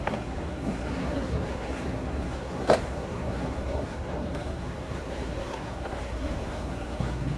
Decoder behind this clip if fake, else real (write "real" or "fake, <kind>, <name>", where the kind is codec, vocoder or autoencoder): fake, codec, SNAC